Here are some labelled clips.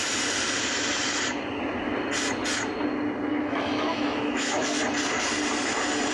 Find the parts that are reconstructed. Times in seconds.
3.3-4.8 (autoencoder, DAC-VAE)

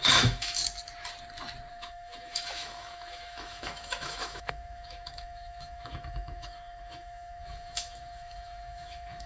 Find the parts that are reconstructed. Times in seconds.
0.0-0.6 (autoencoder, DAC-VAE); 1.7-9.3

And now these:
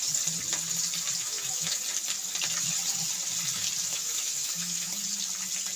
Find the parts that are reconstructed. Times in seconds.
1.2-1.8 (autoencoder, DAC-VAE); 3.8-4.9

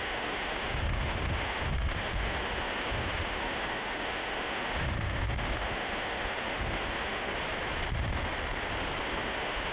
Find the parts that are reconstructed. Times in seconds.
0.0-7.3 (autoencoder, DAC-VAE); 7.9-8.3; 9.0-9.7

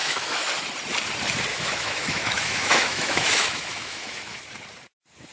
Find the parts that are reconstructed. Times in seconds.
0.0-0.5 (autoencoder, DAC-VAE); 1.5-4.4

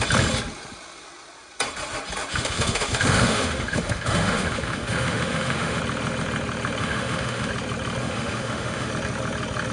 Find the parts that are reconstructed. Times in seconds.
2.3-5.8 (autoencoder, DAC-VAE); 6.8-7.5; 8.0-8.9